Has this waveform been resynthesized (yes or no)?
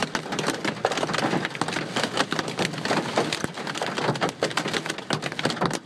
no